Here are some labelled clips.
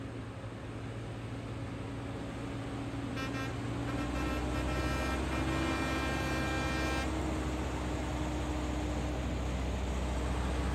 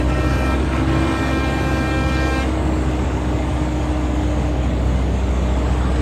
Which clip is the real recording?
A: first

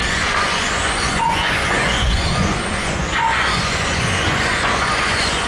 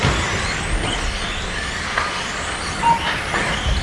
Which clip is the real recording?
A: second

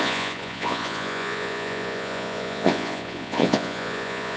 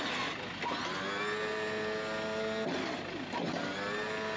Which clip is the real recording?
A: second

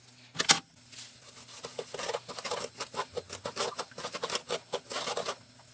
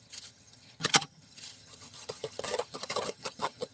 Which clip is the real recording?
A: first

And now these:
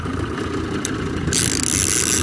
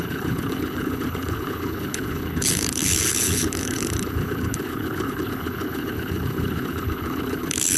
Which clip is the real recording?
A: first